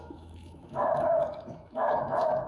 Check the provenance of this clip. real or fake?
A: fake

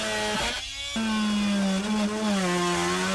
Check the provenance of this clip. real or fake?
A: real